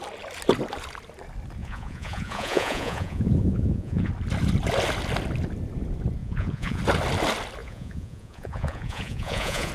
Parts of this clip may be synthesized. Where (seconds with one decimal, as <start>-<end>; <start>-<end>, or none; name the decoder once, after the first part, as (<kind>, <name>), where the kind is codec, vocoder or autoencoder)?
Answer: 1.6-4.1 (vocoder, Vocos); 6.2-6.8; 7.6-9.7